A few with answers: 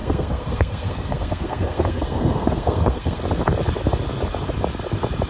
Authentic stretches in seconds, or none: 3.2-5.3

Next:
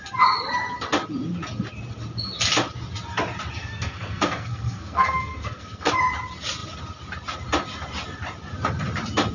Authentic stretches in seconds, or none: 0.0-3.6; 5.9-9.3

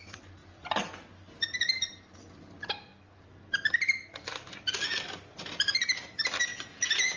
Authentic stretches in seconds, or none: 0.0-6.5